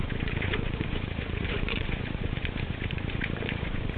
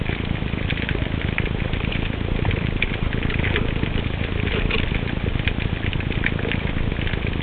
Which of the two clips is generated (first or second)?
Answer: first